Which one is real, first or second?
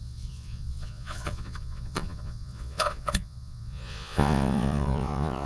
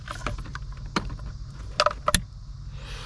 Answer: second